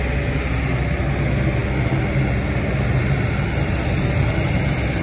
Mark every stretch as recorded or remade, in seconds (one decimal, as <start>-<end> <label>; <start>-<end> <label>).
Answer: 0.0-5.0 recorded